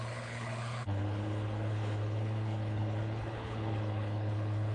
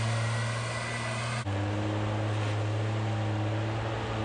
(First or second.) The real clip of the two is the second